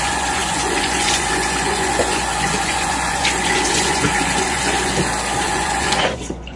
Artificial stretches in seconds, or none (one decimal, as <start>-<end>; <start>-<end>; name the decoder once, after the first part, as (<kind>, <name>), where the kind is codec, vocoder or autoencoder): 0.0-4.9 (vocoder, Vocos); 5.4-6.6